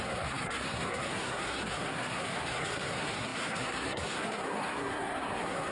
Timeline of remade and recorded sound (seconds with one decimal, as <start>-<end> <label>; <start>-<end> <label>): 0.0-5.7 remade